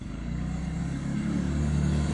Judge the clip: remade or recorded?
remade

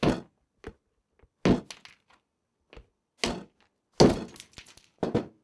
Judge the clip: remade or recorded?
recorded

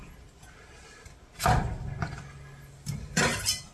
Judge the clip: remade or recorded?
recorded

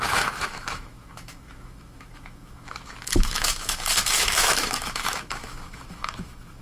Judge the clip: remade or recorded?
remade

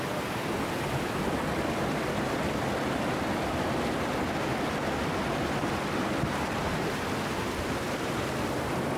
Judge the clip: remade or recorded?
recorded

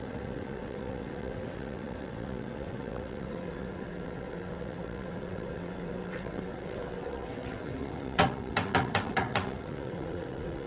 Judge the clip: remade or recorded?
remade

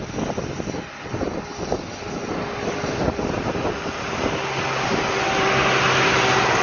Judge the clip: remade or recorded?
recorded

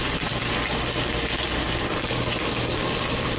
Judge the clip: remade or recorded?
remade